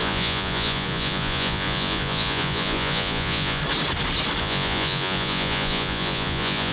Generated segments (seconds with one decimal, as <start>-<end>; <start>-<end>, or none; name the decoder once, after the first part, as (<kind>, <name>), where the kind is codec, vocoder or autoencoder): 0.0-3.6 (vocoder, Vocos); 4.4-6.7

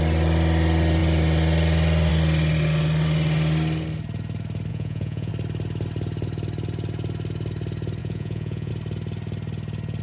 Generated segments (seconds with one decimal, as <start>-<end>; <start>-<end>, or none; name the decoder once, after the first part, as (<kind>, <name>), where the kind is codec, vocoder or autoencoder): 4.7-5.3 (vocoder, Vocos); 8.0-8.7

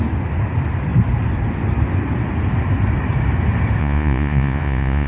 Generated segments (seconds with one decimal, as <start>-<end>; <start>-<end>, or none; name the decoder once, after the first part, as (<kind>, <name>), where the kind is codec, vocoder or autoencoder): 3.8-5.1 (vocoder, Vocos)

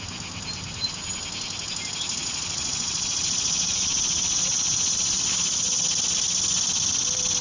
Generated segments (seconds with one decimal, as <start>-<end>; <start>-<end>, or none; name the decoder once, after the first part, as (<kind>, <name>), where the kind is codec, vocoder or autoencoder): 2.2-5.8 (vocoder, Vocos)

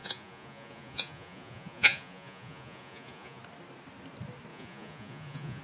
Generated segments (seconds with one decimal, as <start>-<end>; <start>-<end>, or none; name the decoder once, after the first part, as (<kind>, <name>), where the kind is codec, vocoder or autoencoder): 0.0-3.4 (vocoder, Vocos); 4.5-5.6

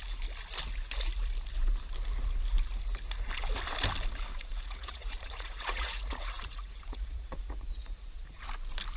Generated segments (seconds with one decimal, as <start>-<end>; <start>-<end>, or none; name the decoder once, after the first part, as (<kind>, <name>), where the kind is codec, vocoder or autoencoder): 4.3-8.5 (vocoder, Vocos)

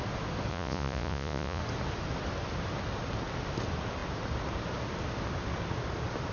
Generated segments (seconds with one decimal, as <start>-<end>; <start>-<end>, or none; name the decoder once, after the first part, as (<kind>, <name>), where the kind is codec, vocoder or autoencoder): 0.5-1.6 (vocoder, Vocos)

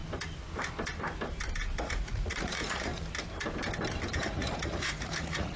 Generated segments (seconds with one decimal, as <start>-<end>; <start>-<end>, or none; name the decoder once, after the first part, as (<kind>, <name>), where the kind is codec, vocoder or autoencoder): 1.8-2.9 (vocoder, Vocos); 4.2-5.6